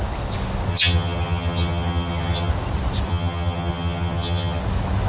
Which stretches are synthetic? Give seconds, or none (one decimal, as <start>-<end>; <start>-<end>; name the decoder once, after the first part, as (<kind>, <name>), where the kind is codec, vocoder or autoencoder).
0.7-2.5 (vocoder, HiFi-GAN); 3.1-4.6